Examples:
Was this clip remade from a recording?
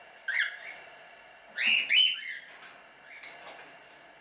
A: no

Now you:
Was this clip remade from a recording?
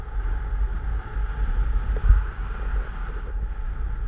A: no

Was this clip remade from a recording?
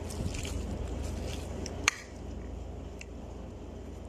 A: yes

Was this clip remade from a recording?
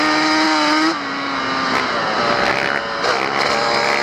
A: no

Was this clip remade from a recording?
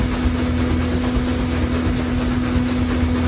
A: no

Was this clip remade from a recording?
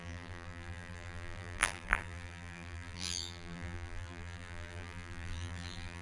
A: yes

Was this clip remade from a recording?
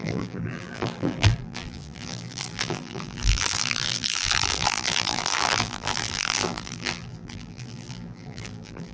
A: yes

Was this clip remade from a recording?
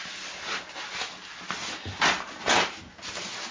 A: no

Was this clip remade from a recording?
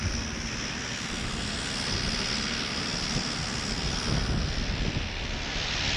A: no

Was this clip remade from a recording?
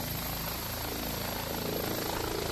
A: no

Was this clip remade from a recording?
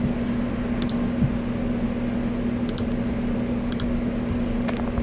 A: no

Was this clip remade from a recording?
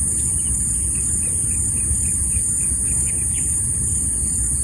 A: yes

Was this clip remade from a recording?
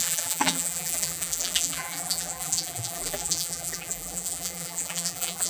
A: yes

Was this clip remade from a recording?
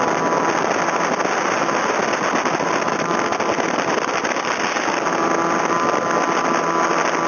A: no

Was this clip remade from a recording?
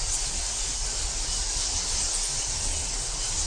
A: no